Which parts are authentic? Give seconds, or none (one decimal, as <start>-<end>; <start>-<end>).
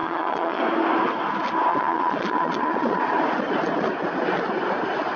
0.6-1.7; 3.0-5.2